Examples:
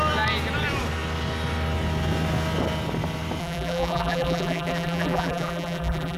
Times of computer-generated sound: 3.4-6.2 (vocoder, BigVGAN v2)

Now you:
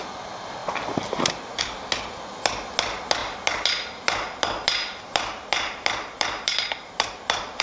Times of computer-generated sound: 3.2-7.6 (vocoder, BigVGAN v2)